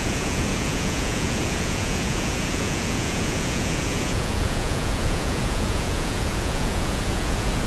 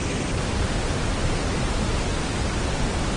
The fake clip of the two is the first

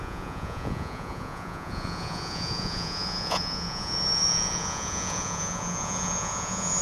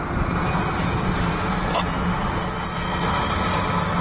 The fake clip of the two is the first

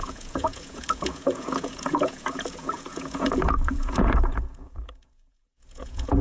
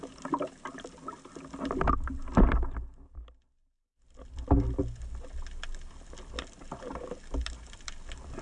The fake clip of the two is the first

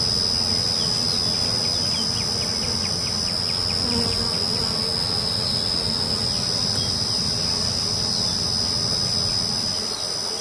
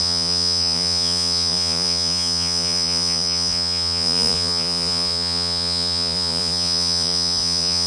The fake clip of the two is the second